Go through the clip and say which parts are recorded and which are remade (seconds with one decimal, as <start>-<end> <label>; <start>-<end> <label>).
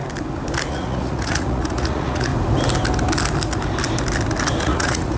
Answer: 0.0-0.7 recorded; 0.7-2.3 remade; 2.3-4.6 recorded; 4.6-5.2 remade